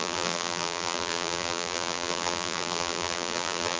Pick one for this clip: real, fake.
fake